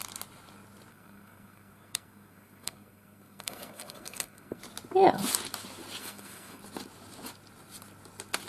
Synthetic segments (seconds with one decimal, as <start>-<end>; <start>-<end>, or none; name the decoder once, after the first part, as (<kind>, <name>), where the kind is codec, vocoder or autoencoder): 0.9-4.6 (codec, SNAC); 6.0-6.6